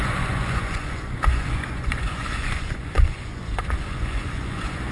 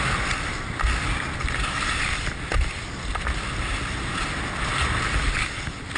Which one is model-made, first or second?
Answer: first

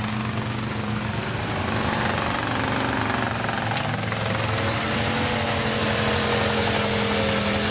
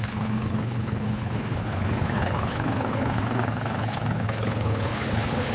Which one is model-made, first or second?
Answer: second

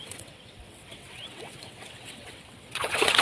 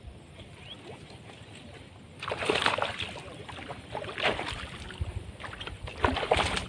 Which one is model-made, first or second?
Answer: first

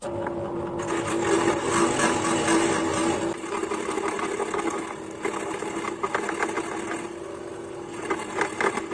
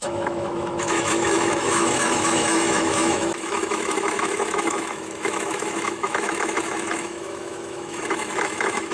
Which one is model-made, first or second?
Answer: second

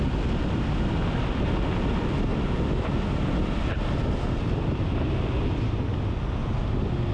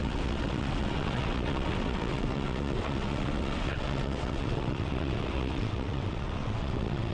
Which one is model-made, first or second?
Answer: second